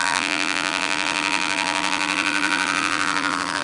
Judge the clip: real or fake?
fake